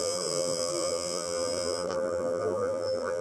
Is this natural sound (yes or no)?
no